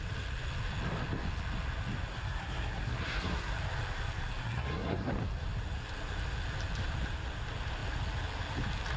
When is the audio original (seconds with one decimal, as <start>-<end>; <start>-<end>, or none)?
0.0-2.1; 3.5-4.4; 5.1-9.0